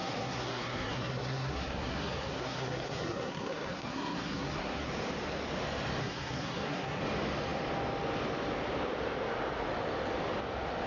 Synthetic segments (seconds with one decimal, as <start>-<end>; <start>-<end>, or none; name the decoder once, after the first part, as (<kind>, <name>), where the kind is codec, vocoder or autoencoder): 0.0-4.9 (codec, SNAC); 6.0-7.0